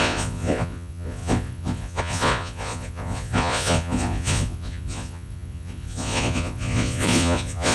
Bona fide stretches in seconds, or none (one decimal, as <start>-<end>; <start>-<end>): none

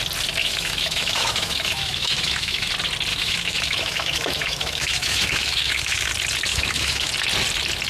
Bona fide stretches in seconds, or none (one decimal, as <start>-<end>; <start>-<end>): 0.0-0.4; 2.7-3.1; 6.1-6.5; 7.1-7.9

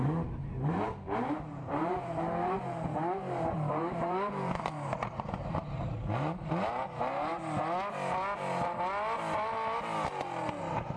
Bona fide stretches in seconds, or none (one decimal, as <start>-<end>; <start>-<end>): 7.3-10.6

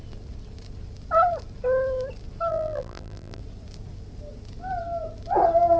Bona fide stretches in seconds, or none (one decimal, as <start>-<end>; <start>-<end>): 0.0-2.5; 3.4-5.8

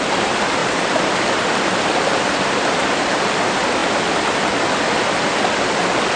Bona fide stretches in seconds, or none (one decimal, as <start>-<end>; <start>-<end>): 0.0-0.6; 3.1-6.2

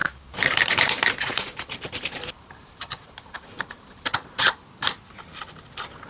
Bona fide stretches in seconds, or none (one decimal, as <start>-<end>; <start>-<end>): 3.7-6.1

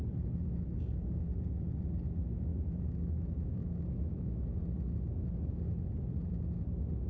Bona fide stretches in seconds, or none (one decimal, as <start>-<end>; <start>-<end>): 0.0-2.5; 4.6-7.1

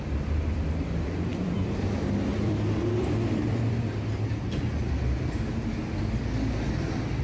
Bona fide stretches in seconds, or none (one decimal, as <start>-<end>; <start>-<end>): 0.0-1.3; 4.2-7.2